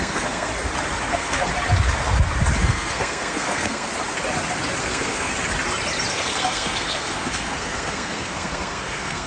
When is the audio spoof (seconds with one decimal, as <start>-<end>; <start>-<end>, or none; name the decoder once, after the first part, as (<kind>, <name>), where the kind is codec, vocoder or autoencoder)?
0.0-0.5 (codec, SNAC); 1.1-1.5; 2.6-3.9; 4.8-5.3; 6.1-9.3